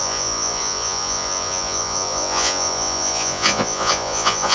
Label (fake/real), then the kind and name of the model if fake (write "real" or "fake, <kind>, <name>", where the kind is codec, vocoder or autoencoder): fake, vocoder, Vocos